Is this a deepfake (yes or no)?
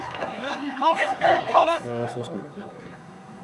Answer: yes